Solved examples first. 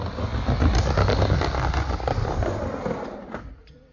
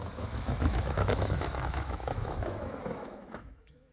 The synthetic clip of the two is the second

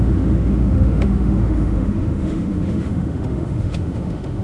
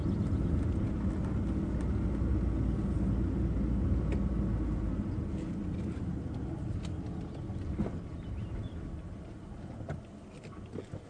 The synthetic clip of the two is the first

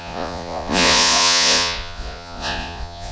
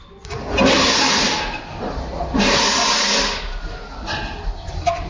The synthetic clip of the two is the first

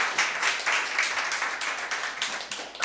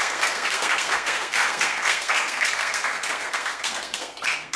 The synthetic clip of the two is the second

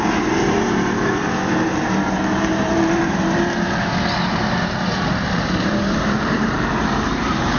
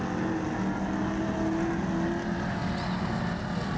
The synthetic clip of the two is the first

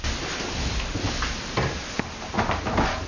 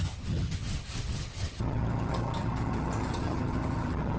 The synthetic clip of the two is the second